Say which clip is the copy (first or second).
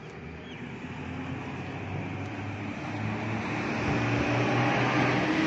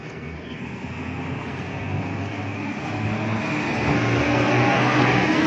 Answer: second